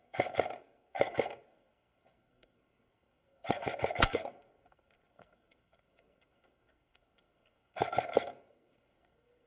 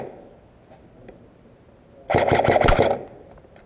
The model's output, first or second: first